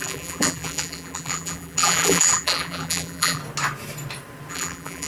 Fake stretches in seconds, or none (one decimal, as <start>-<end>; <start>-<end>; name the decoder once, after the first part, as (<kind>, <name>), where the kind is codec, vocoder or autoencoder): 0.0-3.4 (vocoder, BigVGAN v2); 4.5-5.1